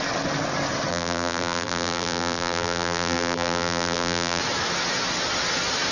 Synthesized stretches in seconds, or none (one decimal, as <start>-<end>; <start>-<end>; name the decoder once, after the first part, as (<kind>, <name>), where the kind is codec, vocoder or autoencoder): 0.9-4.4 (vocoder, BigVGAN v2)